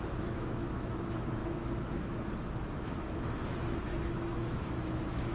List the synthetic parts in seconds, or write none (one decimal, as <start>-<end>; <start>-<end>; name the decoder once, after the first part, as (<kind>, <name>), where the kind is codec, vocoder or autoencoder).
0.0-5.3 (autoencoder, DAC-VAE)